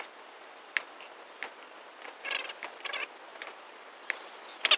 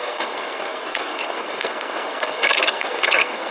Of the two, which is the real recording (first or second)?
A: first